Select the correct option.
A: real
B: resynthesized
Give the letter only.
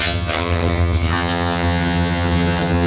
B